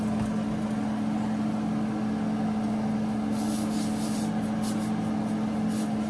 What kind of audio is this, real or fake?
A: real